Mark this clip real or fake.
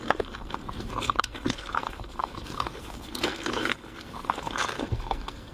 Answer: fake